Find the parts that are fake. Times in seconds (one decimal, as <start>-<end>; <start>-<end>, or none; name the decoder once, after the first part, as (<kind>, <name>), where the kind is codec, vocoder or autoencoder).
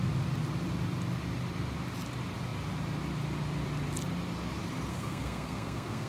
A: 4.9-6.1 (codec, SNAC)